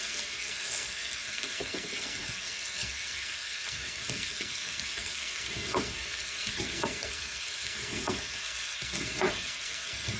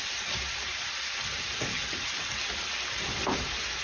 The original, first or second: second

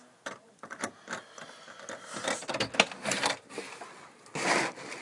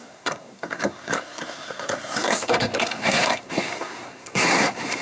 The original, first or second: first